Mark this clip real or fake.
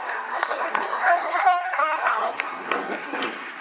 fake